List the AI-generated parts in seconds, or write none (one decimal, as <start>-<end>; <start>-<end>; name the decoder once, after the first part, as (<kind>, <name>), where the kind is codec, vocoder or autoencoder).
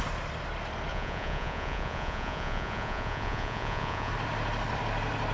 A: 0.9-4.1 (vocoder, Vocos)